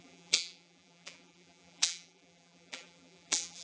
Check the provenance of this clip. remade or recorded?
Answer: remade